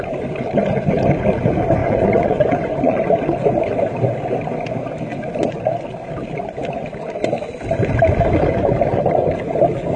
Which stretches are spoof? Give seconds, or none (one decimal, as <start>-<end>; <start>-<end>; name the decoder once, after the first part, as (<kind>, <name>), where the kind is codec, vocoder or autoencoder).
1.8-3.2 (vocoder, Vocos); 5.1-5.6